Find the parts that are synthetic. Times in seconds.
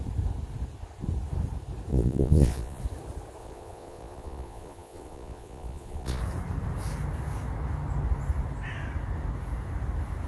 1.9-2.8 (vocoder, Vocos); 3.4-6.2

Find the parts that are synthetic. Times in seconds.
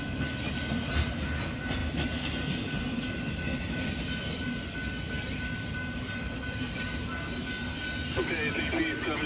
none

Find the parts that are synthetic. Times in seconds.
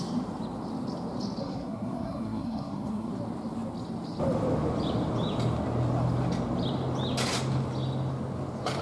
1.4-3.1 (codec, SNAC)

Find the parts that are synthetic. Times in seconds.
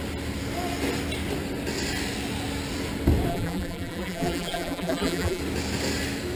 3.3-5.4 (vocoder, BigVGAN v2)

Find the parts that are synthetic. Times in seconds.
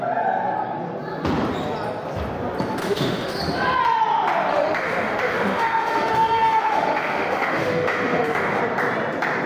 2.8-3.4 (autoencoder, DAC-VAE); 4.5-8.6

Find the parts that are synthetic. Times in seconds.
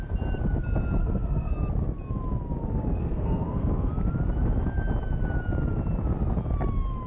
1.0-1.5 (codec, SNAC); 3.0-3.9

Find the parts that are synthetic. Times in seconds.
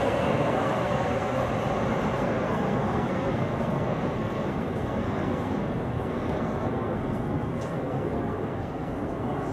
0.0-1.4 (codec, SNAC); 2.1-9.5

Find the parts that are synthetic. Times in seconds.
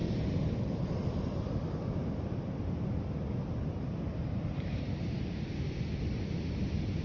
none